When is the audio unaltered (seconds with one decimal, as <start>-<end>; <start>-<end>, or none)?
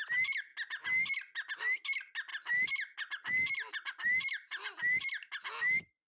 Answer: 0.0-6.1